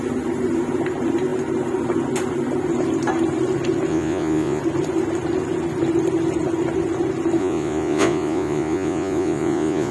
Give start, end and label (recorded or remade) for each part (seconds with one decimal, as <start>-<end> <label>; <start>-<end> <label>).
0.0-3.9 recorded; 3.9-4.6 remade; 4.6-7.4 recorded; 7.4-9.9 remade